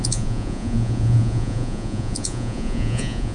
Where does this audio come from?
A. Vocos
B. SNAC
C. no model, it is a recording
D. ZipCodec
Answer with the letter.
A